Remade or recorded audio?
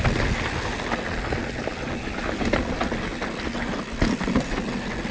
recorded